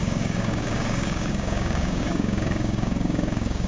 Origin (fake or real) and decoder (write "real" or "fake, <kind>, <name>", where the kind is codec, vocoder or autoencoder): fake, codec, DAC